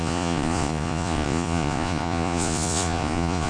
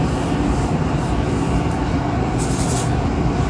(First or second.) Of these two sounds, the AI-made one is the first